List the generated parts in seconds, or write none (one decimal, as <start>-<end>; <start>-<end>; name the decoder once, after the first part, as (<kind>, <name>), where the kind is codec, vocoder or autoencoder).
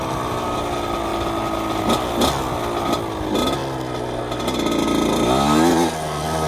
none